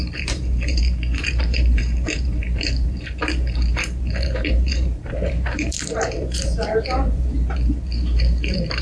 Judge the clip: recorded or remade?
remade